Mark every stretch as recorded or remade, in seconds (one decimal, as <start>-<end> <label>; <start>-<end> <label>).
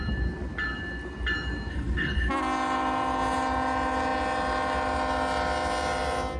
0.0-1.7 recorded; 1.7-2.3 remade; 2.3-6.4 recorded